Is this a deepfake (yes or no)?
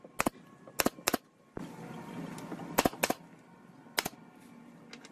no